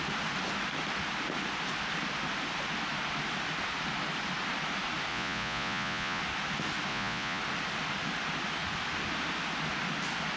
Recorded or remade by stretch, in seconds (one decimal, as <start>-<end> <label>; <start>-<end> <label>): 0.0-5.1 recorded; 5.1-6.2 remade; 6.2-6.9 recorded; 6.9-7.4 remade; 7.4-10.4 recorded